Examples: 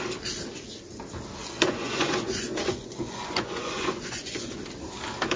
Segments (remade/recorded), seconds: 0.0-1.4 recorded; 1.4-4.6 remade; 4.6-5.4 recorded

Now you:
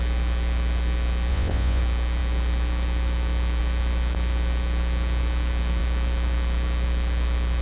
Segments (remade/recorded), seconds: 0.0-1.3 recorded; 1.3-1.8 remade; 1.8-7.6 recorded

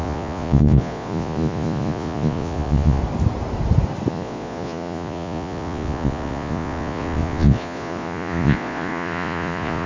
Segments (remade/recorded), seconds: 0.0-3.0 remade; 3.0-4.1 recorded; 4.1-9.9 remade

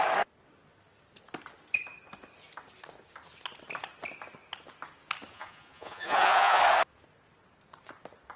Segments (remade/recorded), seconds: 0.0-5.3 recorded; 5.3-6.6 remade; 6.6-8.4 recorded

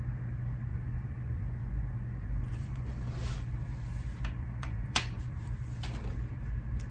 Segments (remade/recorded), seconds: 0.0-0.7 recorded; 0.7-3.1 remade; 3.1-4.4 recorded; 4.4-5.2 remade; 5.2-6.9 recorded